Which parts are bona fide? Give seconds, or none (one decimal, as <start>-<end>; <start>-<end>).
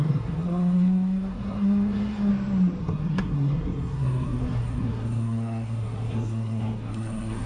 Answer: 2.3-2.8